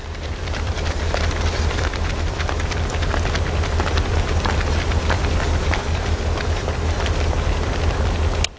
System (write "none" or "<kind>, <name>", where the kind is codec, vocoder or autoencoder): vocoder, BigVGAN v2